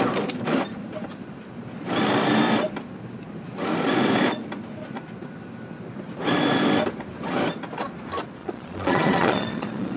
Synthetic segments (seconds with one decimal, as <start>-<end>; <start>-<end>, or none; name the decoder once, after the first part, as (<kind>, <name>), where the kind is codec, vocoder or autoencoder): 8.4-10.0 (vocoder, Vocos)